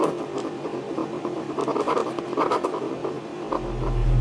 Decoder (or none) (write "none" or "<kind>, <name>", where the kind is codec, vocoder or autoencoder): none